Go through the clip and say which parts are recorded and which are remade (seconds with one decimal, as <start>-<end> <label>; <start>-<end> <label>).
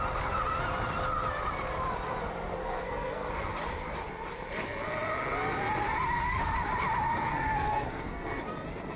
0.0-2.6 recorded; 2.6-3.3 remade; 3.3-7.3 recorded; 7.3-8.4 remade; 8.4-9.0 recorded